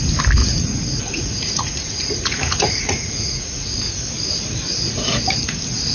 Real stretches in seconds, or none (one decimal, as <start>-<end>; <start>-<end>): 0.0-0.4; 3.9-5.9